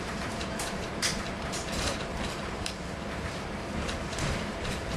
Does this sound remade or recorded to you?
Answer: remade